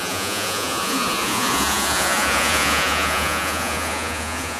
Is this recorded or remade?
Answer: remade